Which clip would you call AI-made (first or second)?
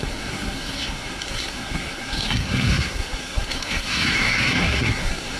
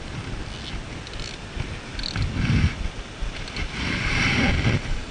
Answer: first